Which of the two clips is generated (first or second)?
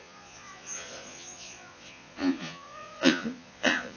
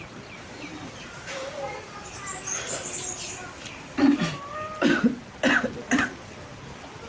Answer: first